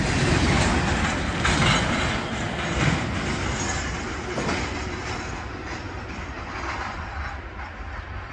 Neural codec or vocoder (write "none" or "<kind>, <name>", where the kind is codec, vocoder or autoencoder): none